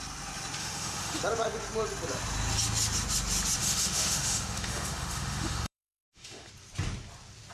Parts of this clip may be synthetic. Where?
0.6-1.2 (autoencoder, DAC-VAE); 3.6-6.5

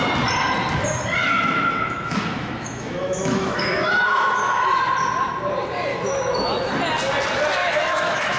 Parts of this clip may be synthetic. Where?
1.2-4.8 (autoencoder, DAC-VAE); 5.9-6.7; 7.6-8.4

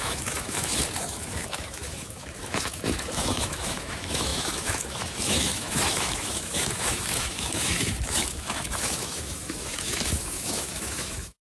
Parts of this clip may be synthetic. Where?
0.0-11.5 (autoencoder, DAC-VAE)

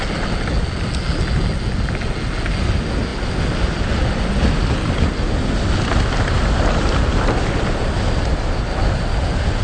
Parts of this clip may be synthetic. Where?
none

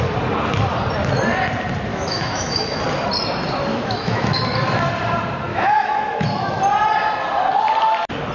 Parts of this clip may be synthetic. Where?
1.9-2.8 (autoencoder, DAC-VAE); 3.7-4.4; 5.5-6.6

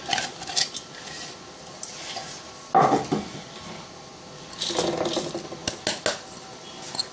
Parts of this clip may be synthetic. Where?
none

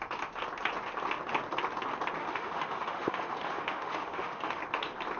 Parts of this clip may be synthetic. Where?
2.2-4.6 (autoencoder, DAC-VAE)

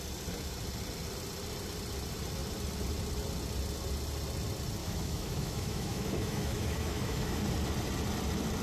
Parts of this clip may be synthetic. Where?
4.8-7.4 (autoencoder, DAC-VAE)